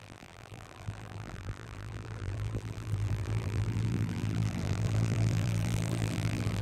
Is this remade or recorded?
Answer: remade